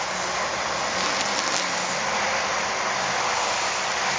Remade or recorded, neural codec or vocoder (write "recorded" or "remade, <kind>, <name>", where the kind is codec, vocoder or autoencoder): recorded